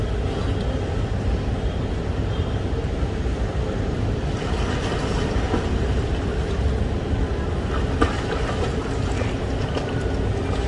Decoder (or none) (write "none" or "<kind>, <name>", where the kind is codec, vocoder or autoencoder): none